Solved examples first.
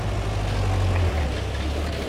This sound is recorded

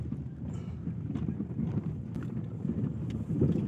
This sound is remade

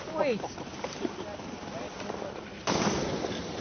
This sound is recorded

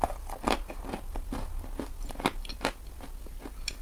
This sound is recorded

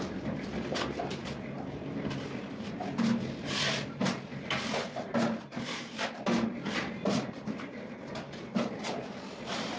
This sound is remade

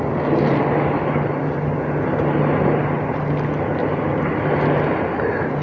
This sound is recorded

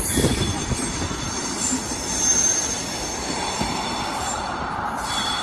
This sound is remade